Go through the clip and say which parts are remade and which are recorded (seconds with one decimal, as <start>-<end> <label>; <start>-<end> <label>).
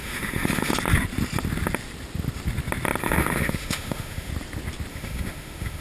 0.0-0.7 remade; 0.7-3.0 recorded; 3.0-4.3 remade; 4.3-4.9 recorded; 4.9-5.8 remade